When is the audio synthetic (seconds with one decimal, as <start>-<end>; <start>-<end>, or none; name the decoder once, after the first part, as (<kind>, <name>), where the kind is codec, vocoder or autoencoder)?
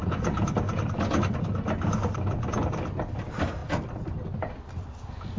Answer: none